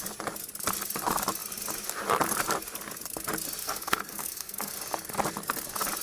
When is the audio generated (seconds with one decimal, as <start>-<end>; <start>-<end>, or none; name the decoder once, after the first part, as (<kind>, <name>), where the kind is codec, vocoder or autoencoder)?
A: 3.6-4.7 (codec, SNAC)